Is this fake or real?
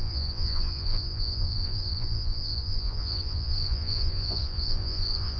fake